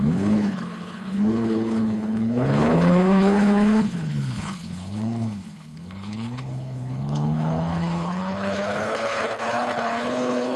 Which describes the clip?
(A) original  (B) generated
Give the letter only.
B